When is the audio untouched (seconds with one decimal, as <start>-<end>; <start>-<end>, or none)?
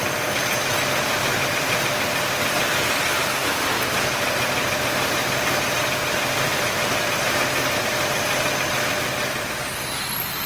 0.0-1.3; 1.8-3.4; 7.4-10.5